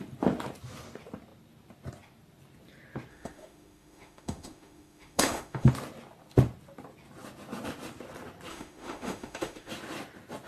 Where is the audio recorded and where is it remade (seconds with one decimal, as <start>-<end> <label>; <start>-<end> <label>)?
0.0-3.1 recorded; 3.1-5.7 remade; 5.7-8.5 recorded; 8.5-9.7 remade; 9.7-10.5 recorded